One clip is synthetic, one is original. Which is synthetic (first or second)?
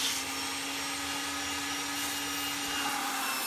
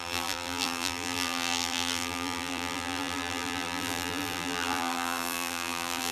second